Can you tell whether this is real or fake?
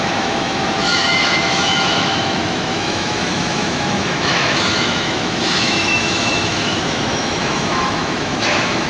fake